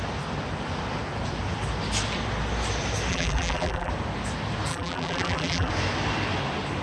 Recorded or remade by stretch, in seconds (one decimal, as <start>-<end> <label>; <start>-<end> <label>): 0.0-3.1 recorded; 3.1-3.9 remade; 3.9-4.7 recorded; 4.7-5.7 remade; 5.7-6.8 recorded